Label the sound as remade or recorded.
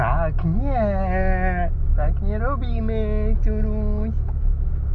recorded